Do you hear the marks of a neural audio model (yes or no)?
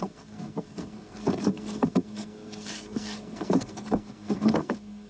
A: yes